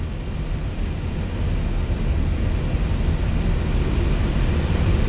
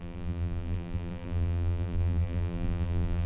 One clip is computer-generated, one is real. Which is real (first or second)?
first